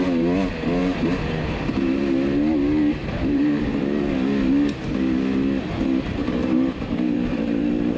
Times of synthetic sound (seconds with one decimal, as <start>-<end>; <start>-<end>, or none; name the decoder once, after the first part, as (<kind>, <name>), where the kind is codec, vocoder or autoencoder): 0.8-2.0 (vocoder, BigVGAN v2); 3.0-3.6; 6.2-8.0